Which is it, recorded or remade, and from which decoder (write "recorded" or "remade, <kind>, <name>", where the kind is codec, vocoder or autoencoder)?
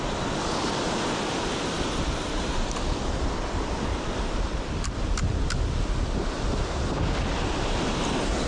recorded